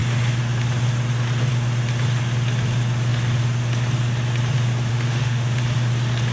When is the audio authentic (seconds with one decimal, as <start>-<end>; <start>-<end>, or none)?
0.0-4.9; 5.6-6.3